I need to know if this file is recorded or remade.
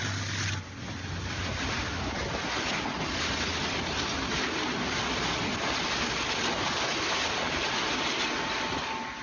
recorded